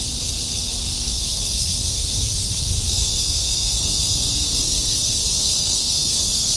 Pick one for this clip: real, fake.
fake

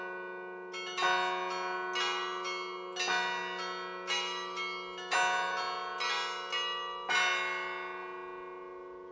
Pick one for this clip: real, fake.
real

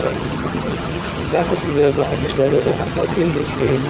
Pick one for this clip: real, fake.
fake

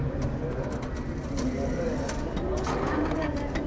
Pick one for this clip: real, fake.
real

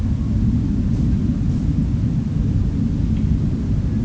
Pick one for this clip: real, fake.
real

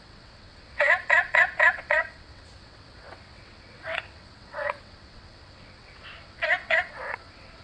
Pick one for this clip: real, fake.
fake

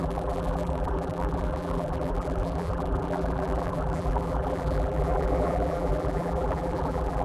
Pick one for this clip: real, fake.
fake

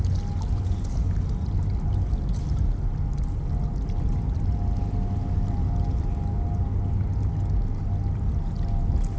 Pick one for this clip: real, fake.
real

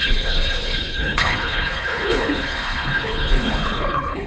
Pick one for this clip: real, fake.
fake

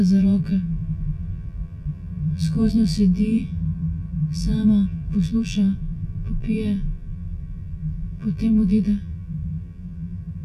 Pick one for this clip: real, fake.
fake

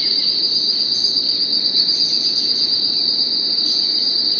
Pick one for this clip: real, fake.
real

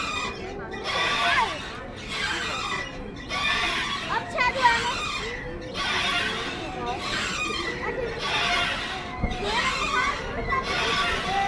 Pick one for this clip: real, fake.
real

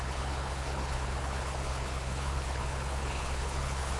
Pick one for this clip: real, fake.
fake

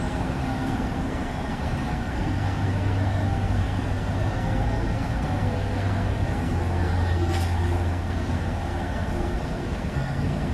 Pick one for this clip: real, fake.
fake